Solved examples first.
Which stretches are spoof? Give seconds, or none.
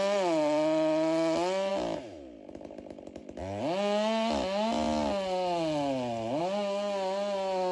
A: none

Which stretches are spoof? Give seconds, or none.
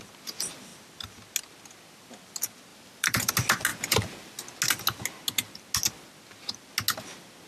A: 2.7-3.3 (vocoder, BigVGAN v2); 3.7-4.4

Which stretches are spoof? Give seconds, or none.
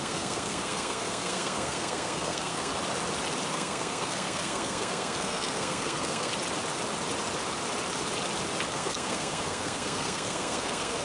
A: 0.0-2.7 (codec, SNAC); 3.5-6.3; 8.7-11.0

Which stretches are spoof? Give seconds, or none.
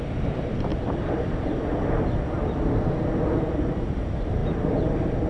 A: 0.0-0.7 (vocoder, BigVGAN v2); 3.2-5.3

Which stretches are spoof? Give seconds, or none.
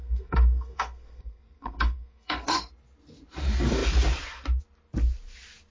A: 0.0-2.7 (codec, SNAC)